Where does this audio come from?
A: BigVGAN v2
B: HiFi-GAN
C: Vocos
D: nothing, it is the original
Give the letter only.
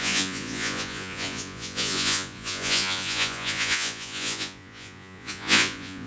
C